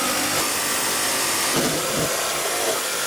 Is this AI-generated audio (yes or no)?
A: no